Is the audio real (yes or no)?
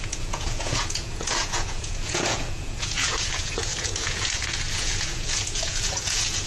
no